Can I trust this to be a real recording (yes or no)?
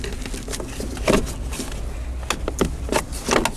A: yes